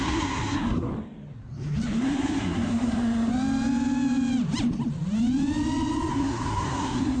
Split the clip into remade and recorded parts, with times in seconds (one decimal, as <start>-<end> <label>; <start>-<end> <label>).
0.0-0.9 remade; 0.9-2.0 recorded; 2.0-3.3 remade; 3.3-6.1 recorded; 6.1-7.2 remade